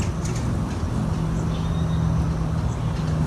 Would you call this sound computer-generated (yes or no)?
no